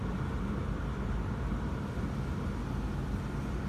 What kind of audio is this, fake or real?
real